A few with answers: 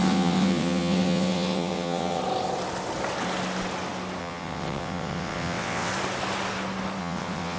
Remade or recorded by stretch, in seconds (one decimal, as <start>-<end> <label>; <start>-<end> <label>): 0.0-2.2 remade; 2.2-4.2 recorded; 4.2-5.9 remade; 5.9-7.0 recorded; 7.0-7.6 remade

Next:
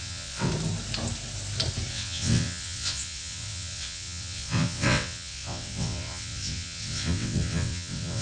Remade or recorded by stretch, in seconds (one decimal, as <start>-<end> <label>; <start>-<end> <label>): 0.0-0.5 remade; 0.5-1.9 recorded; 1.9-8.2 remade

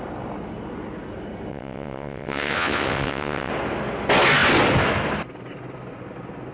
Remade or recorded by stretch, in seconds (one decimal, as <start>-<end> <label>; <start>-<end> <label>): 0.0-1.5 recorded; 1.5-3.5 remade; 3.5-6.5 recorded

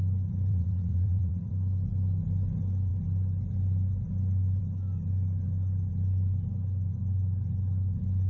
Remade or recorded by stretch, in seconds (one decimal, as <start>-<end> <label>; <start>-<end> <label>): 0.0-0.5 recorded; 0.5-1.5 remade; 1.5-8.3 recorded

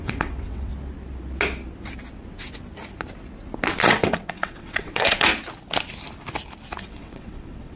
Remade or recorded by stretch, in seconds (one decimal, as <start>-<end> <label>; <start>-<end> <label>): 0.0-0.7 remade; 0.7-3.9 recorded; 3.9-5.3 remade; 5.3-6.8 recorded; 6.8-7.8 remade

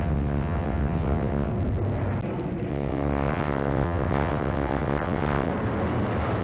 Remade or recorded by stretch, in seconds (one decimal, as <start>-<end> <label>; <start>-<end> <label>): 0.0-1.5 remade; 1.5-2.7 recorded; 2.7-5.5 remade; 5.5-6.4 recorded

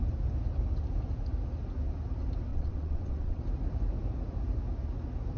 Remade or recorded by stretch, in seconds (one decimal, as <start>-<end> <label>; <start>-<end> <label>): 0.0-2.5 recorded; 2.5-3.4 remade; 3.4-5.4 recorded

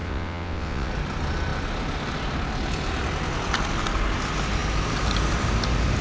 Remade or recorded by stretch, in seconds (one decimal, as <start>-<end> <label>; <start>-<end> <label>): 0.0-0.9 remade; 0.9-6.0 recorded